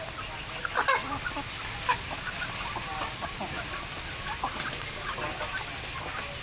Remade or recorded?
recorded